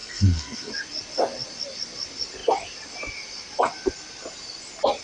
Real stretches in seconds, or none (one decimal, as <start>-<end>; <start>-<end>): 0.7-5.0